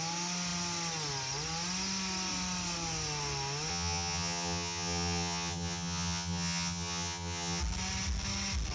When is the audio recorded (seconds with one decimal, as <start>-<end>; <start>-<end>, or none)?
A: 0.0-3.7; 7.6-8.7